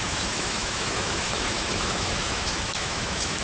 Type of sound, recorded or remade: remade